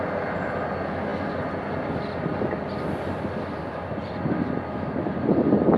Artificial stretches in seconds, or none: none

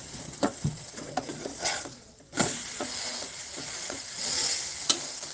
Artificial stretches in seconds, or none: 0.0-4.4 (vocoder, Vocos)

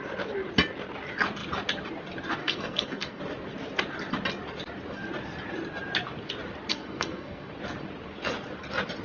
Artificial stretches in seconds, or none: 2.4-3.2 (codec, SNAC); 6.7-7.5